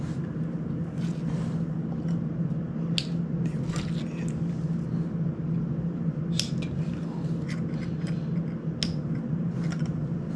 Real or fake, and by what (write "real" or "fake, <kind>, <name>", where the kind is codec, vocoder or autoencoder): real